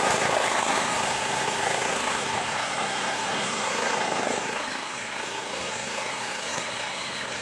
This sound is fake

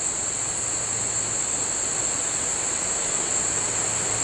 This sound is real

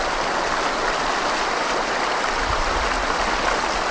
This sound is real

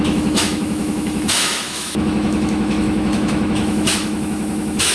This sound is fake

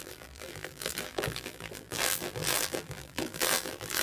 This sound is fake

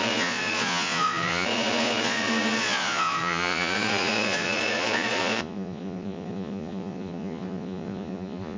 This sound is fake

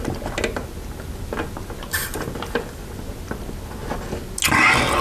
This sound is real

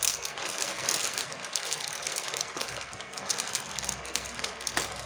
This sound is fake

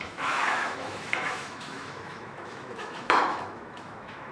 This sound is fake